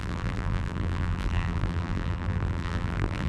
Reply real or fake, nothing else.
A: fake